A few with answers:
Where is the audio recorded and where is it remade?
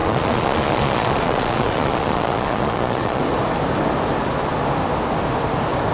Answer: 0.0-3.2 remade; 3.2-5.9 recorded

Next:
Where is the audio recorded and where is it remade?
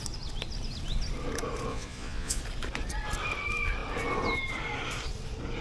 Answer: 0.0-1.7 recorded; 1.7-2.4 remade; 2.4-5.6 recorded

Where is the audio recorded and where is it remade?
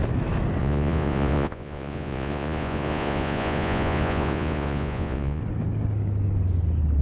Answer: 0.0-0.6 recorded; 0.6-5.4 remade; 5.4-7.0 recorded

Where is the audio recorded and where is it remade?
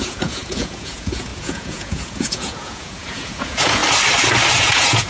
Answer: 0.0-3.8 remade; 3.8-4.6 recorded; 4.6-5.1 remade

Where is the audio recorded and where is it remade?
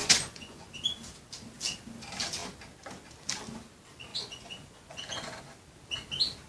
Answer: 0.0-0.7 remade; 0.7-4.1 recorded; 4.1-5.4 remade; 5.4-6.5 recorded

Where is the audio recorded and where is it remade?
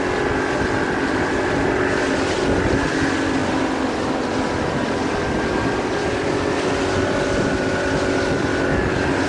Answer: 0.0-9.3 recorded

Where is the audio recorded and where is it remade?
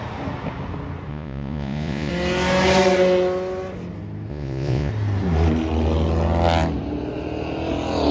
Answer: 0.0-1.1 recorded; 1.1-2.1 remade; 2.1-4.3 recorded; 4.3-4.9 remade; 4.9-8.1 recorded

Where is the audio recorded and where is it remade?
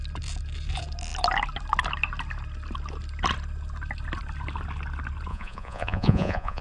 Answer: 0.0-5.3 recorded; 5.3-6.6 remade